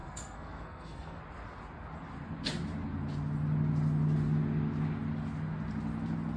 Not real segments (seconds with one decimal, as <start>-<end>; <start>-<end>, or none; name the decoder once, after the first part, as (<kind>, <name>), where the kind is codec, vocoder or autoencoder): 0.0-1.2 (codec, SNAC)